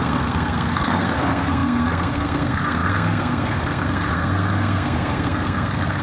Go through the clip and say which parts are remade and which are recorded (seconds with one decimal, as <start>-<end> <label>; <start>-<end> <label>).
0.0-6.0 remade